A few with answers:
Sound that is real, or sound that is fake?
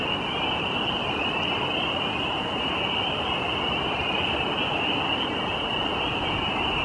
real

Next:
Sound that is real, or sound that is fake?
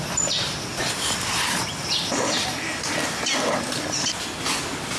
real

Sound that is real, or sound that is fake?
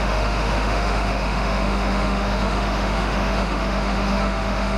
fake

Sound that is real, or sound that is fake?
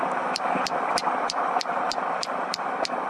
real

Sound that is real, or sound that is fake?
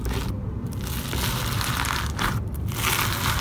real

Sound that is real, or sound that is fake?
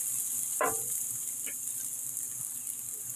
real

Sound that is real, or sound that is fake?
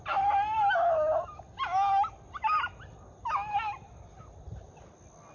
real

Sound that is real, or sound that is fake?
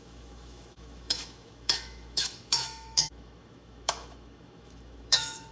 fake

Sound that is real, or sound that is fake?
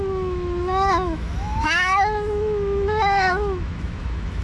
fake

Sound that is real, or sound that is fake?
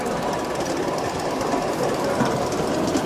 real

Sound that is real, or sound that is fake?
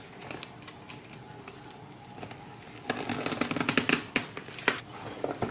real